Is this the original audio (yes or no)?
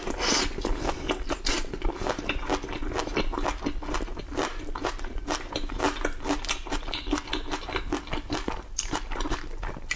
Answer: yes